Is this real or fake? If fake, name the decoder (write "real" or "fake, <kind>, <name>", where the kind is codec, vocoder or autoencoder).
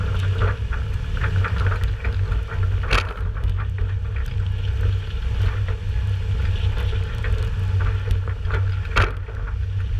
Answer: real